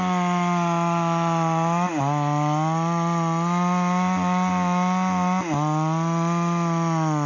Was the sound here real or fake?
real